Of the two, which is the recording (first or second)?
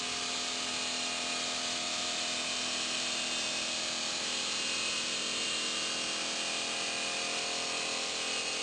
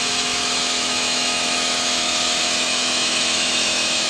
first